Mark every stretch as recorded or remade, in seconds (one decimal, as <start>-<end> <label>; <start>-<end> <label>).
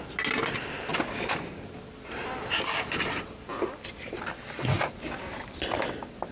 0.0-6.3 recorded